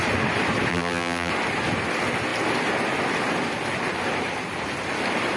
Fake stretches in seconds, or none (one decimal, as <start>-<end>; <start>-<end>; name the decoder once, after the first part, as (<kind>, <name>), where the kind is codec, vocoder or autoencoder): 0.7-1.3 (vocoder, BigVGAN v2)